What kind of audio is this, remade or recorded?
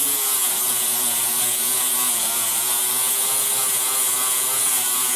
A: remade